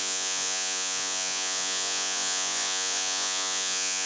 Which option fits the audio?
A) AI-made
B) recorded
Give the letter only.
A